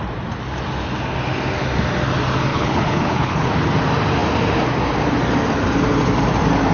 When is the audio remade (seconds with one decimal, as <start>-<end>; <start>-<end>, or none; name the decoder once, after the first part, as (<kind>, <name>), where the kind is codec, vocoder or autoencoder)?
2.5-3.5 (codec, HILCodec)